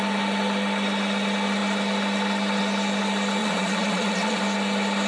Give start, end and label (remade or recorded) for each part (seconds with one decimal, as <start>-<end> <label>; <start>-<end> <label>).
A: 0.0-3.4 recorded; 3.4-4.4 remade; 4.4-5.1 recorded